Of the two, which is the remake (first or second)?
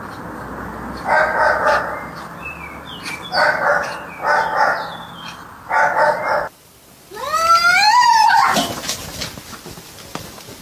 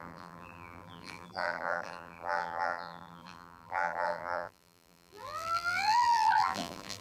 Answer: second